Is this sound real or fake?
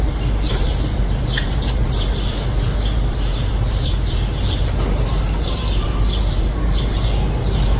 fake